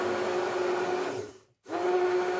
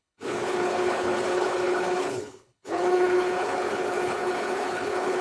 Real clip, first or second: first